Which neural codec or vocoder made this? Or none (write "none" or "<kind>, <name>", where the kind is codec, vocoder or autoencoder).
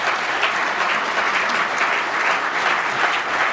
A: none